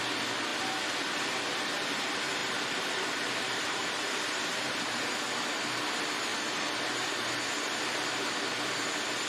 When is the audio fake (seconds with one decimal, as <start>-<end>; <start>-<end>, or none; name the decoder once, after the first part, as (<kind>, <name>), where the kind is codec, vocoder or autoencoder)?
2.4-5.0 (vocoder, BigVGAN v2)